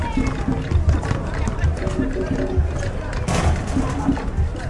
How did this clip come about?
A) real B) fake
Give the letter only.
A